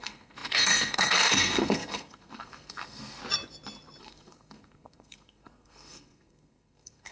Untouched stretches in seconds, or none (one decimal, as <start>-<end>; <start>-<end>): 3.2-4.0